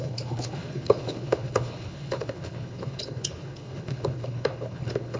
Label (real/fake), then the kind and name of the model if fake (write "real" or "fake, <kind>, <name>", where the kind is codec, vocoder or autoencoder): fake, codec, HILCodec